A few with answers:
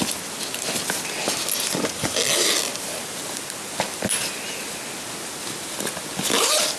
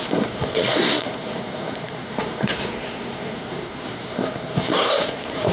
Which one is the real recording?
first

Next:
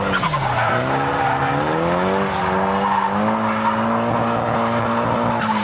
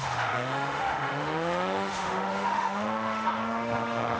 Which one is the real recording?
first